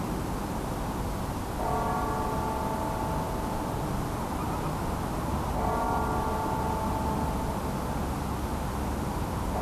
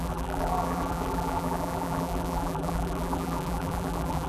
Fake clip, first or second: second